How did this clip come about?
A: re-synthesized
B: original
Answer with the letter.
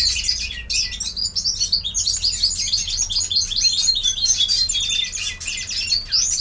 B